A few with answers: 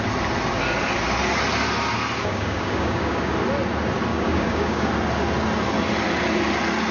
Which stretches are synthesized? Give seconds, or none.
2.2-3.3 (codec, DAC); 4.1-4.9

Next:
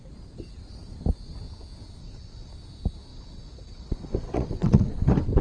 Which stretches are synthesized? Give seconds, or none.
2.0-2.5 (vocoder, WaveNeXt); 3.1-4.9

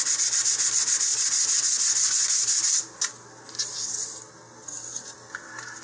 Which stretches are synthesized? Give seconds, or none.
none

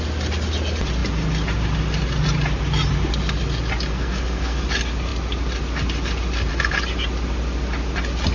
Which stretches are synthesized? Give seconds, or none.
3.9-4.6 (codec, SNAC)